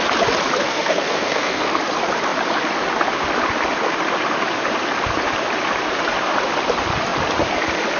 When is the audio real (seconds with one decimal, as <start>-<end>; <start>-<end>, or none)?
0.0-0.6; 1.8-8.0